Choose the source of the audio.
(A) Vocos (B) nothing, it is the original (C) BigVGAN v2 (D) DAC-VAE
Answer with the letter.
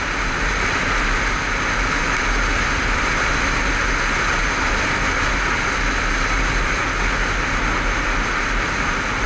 B